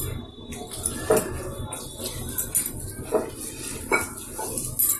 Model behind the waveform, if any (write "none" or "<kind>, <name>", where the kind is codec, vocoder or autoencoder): none